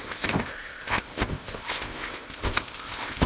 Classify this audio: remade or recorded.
remade